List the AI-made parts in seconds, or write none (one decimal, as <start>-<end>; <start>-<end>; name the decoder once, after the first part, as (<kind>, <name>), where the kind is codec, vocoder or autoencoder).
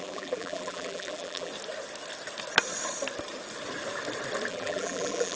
0.0-1.5 (vocoder, BigVGAN v2); 4.5-5.4